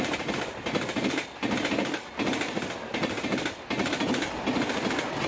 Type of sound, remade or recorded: recorded